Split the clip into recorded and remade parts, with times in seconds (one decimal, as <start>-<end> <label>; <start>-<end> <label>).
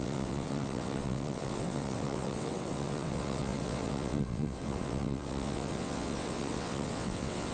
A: 0.0-7.5 remade